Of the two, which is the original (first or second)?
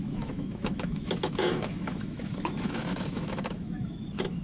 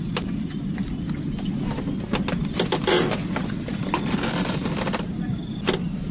second